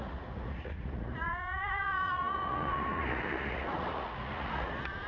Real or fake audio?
fake